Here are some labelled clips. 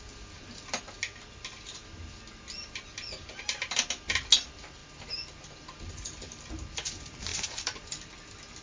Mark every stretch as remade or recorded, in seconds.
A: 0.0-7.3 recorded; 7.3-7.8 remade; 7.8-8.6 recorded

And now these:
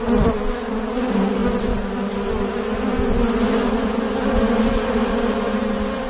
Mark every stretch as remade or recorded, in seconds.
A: 0.0-6.1 recorded

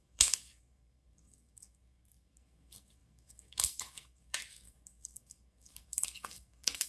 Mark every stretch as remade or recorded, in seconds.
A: 0.0-6.9 remade

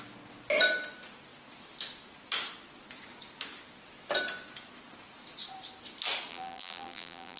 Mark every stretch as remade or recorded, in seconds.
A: 0.0-6.3 recorded; 6.3-7.4 remade